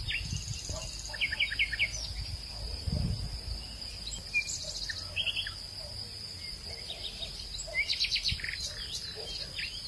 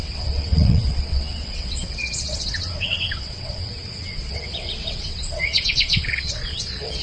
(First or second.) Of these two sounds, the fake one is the second